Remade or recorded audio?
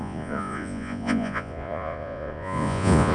remade